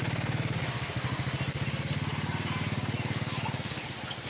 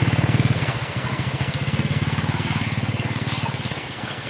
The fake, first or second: second